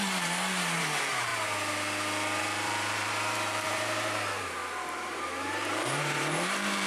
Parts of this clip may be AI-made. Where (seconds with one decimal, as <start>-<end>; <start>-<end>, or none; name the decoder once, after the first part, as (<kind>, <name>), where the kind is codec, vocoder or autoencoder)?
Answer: 0.0-1.3 (vocoder, BigVGAN v2); 2.4-6.9